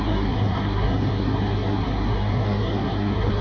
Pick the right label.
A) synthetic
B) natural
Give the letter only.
A